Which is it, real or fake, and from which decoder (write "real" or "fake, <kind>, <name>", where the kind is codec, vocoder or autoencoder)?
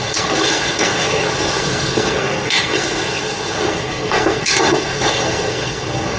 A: fake, codec, SNAC